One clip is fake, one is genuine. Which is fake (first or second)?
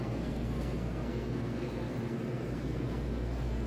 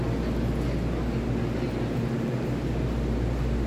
first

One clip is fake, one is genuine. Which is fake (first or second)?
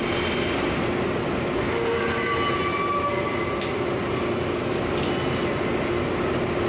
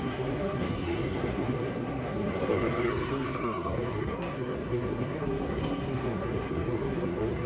second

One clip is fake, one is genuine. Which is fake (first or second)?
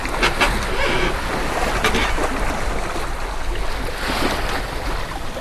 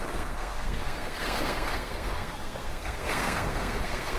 second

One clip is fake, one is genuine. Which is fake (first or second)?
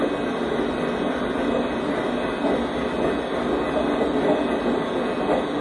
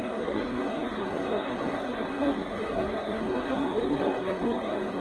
second